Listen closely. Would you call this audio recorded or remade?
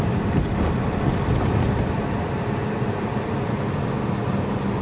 recorded